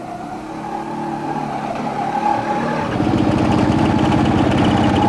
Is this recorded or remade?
recorded